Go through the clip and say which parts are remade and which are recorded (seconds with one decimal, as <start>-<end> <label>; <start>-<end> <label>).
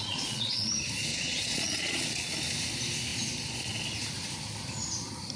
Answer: 0.0-0.7 remade; 0.7-1.1 recorded; 1.1-2.3 remade; 2.3-5.4 recorded